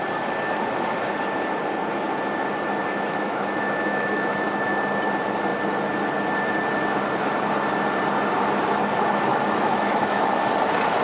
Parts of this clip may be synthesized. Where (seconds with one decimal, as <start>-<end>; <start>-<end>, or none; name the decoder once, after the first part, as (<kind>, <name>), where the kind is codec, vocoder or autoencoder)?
2.8-4.7 (autoencoder, DAC-VAE); 9.3-10.5